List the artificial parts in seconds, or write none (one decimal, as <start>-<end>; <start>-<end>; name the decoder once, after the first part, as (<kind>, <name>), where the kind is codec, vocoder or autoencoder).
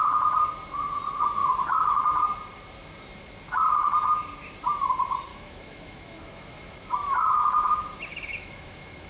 1.4-1.9 (autoencoder, DAC-VAE); 5.3-9.1